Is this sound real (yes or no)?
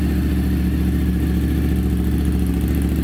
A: yes